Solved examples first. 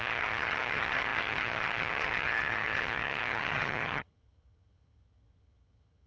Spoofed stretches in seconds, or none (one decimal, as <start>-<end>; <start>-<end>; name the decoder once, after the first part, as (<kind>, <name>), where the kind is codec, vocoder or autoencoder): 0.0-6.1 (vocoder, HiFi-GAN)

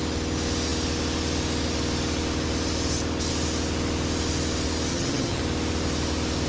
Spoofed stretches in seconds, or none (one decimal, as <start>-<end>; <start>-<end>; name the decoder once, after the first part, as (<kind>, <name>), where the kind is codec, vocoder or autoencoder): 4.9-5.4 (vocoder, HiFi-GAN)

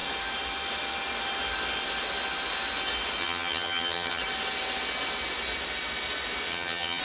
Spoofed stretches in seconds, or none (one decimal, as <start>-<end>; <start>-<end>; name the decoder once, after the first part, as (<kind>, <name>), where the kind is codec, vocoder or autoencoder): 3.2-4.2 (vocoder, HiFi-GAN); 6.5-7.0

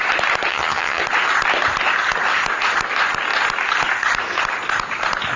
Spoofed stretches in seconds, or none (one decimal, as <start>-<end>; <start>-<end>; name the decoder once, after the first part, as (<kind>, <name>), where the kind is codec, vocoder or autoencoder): 0.5-1.0 (vocoder, HiFi-GAN)

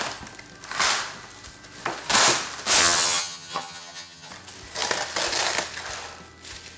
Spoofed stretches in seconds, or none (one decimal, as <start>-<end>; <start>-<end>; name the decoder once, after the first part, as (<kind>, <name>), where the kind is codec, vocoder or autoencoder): 2.8-4.3 (vocoder, HiFi-GAN)

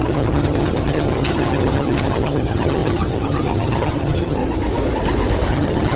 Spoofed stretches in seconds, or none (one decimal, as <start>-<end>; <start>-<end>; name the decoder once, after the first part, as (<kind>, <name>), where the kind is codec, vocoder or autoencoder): 0.0-4.4 (vocoder, HiFi-GAN); 5.5-6.0

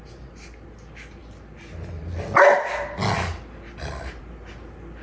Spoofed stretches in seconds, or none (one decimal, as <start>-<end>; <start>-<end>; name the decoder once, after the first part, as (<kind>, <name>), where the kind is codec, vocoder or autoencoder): none